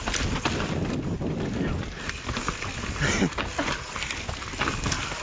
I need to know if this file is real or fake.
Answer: real